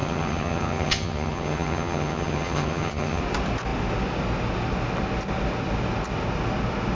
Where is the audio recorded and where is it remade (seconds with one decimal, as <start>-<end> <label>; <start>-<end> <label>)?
0.0-3.2 remade; 3.2-6.9 recorded